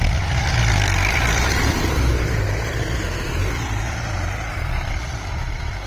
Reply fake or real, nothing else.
fake